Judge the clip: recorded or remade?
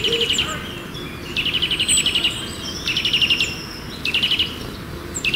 recorded